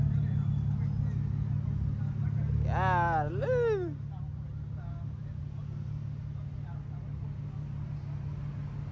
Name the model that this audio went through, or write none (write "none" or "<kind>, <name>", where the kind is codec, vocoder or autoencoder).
none